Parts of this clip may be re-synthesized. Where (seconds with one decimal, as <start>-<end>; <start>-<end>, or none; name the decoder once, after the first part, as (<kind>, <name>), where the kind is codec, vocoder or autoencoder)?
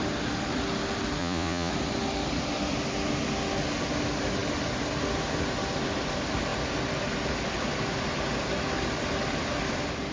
1.2-1.7 (vocoder, Vocos)